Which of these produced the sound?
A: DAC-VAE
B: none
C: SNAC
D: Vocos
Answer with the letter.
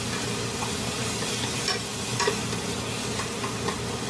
B